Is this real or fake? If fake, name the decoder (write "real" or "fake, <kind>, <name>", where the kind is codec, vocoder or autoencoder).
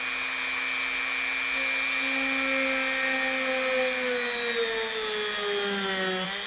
real